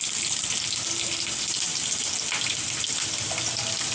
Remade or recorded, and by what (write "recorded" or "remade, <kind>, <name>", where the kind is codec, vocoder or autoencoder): recorded